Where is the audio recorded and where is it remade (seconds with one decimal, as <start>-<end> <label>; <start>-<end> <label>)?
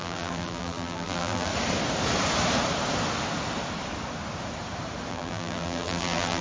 0.0-1.5 remade; 1.5-5.1 recorded; 5.1-6.4 remade